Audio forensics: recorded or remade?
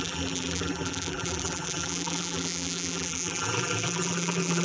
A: remade